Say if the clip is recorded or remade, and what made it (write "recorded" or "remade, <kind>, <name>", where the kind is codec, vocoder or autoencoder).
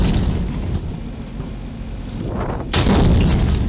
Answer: recorded